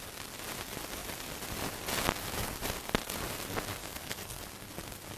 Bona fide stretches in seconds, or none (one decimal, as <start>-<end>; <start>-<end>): 0.0-3.8; 4.4-5.2